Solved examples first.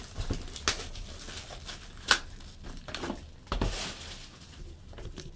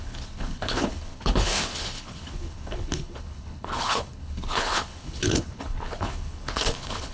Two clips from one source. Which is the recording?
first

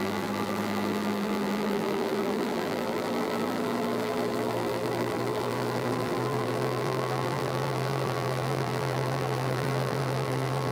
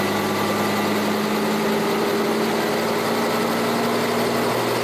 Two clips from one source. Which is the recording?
second